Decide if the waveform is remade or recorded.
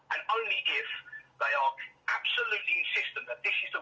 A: recorded